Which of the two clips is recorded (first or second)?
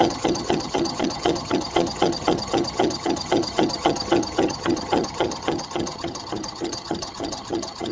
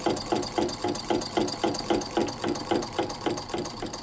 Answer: second